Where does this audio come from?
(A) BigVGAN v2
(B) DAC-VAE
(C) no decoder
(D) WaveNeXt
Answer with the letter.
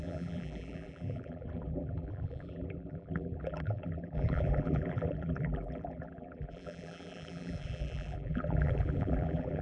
A